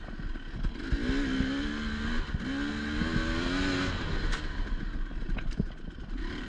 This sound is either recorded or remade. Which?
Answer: recorded